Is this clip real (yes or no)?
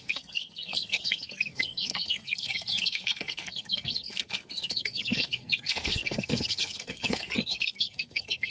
no